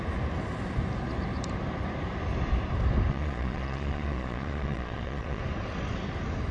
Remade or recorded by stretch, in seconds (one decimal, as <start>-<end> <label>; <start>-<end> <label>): 0.0-3.1 recorded; 3.1-5.4 remade; 5.4-6.5 recorded